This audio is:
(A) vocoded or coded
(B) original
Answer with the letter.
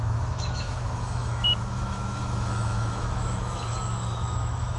A